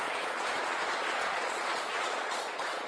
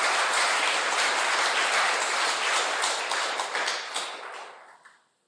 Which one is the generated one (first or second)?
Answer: first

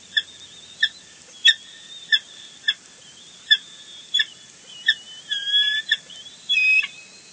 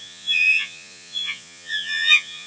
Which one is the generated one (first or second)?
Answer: second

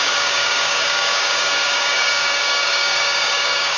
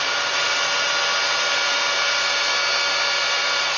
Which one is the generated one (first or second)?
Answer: first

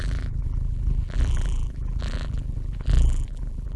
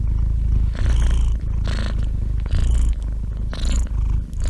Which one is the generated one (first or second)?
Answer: first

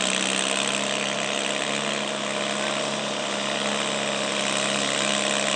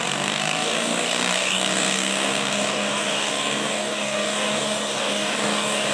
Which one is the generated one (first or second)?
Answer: second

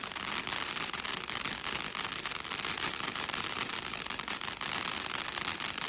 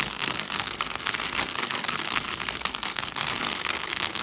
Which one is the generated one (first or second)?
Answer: second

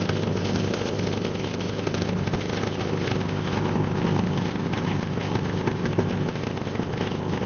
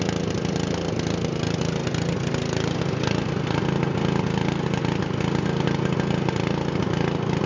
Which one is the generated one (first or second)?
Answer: first